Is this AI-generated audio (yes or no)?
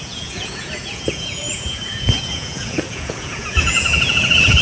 yes